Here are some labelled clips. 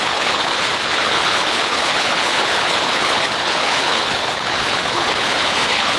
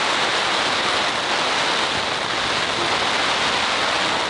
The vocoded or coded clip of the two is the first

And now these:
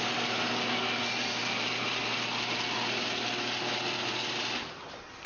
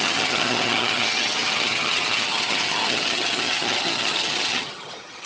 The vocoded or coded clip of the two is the second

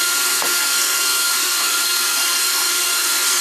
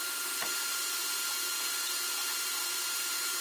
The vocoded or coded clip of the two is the first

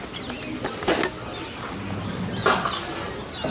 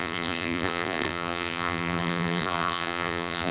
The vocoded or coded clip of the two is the second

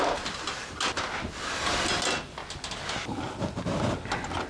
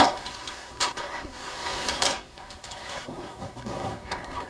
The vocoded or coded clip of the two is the second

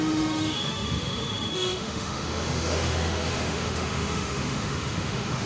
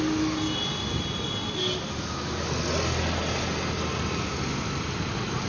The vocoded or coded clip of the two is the first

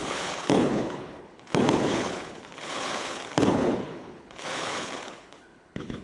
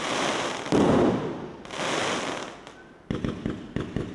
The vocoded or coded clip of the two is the first